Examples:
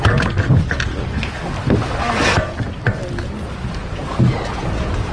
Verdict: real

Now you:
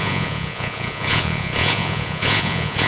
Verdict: fake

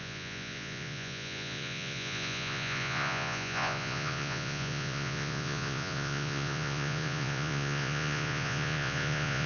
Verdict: fake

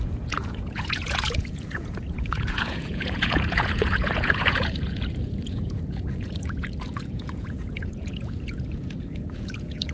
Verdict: fake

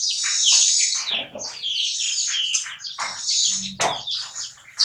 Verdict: real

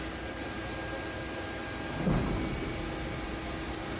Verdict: real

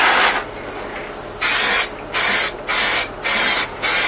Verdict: real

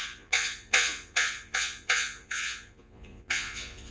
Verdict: fake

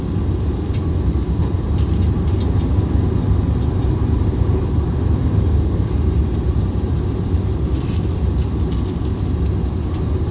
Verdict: real